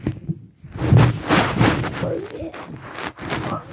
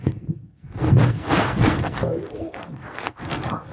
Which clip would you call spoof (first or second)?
second